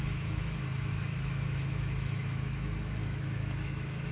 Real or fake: fake